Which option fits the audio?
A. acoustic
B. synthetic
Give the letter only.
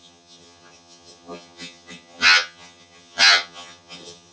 B